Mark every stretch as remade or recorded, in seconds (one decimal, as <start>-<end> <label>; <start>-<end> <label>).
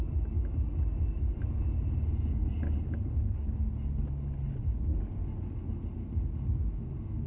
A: 0.0-7.3 recorded